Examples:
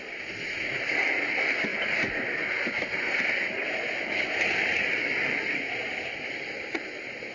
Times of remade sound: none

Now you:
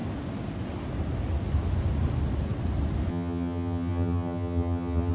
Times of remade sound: 3.1-5.1 (vocoder, HiFi-GAN)

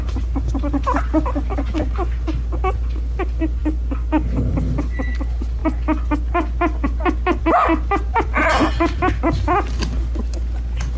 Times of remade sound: 8.1-9.1 (vocoder, BigVGAN v2)